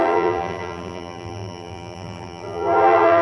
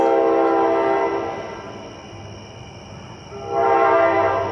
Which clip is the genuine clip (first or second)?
second